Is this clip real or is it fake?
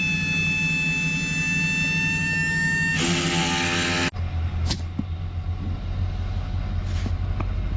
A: real